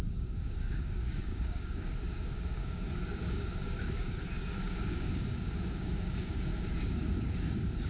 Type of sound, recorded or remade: remade